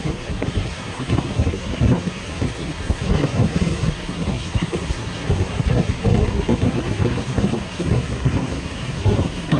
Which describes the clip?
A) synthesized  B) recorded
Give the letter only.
A